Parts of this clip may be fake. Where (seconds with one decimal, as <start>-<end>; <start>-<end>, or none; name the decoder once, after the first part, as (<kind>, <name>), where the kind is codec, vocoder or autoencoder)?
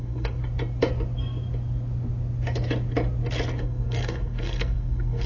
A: 0.0-0.4 (codec, SNAC); 3.6-5.3